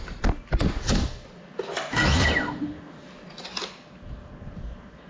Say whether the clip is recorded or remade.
recorded